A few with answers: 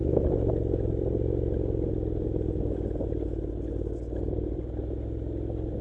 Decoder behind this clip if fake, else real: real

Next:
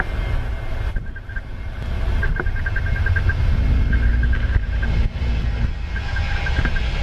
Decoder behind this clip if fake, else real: real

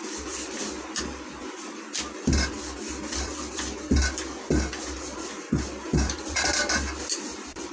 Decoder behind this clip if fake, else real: real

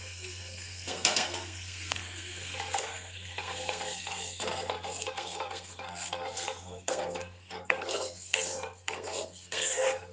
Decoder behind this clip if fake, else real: fake, codec, SNAC